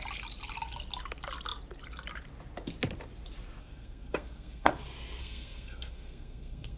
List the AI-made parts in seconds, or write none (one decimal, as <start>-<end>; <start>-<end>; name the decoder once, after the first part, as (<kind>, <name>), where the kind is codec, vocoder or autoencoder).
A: 3.6-4.7 (codec, SNAC); 5.2-6.8

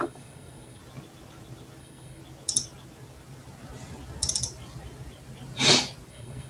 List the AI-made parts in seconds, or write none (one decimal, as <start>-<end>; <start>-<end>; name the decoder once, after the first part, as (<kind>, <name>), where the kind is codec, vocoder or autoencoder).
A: 0.0-0.8 (codec, SNAC); 1.8-2.2; 6.1-6.5

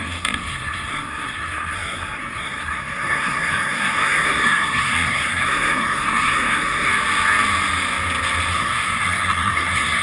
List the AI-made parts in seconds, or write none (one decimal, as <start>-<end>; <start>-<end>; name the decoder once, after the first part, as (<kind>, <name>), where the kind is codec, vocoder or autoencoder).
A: 0.0-6.9 (codec, SNAC); 8.5-10.0